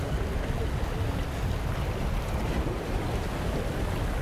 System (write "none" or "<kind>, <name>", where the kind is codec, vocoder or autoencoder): none